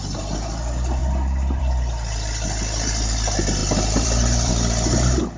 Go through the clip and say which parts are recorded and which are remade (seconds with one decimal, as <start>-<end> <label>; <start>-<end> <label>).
0.0-1.0 recorded; 1.0-1.6 remade; 1.6-3.6 recorded; 3.6-4.5 remade; 4.5-5.4 recorded